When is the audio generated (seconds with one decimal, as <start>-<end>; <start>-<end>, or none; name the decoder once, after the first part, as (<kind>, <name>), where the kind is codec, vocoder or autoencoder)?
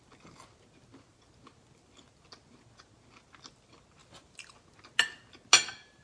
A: none